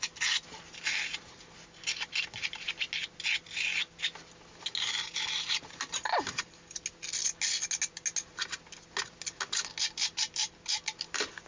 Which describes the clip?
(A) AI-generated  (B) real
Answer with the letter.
B